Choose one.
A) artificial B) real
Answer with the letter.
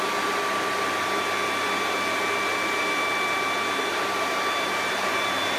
B